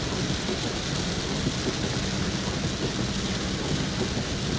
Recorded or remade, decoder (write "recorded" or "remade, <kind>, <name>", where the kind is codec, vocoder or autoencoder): recorded